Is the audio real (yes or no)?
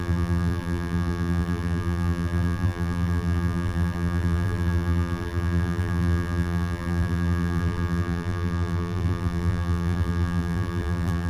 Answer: no